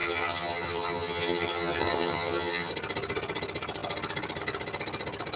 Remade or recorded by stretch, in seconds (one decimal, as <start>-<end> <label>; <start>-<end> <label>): 0.0-2.7 remade; 2.7-5.4 recorded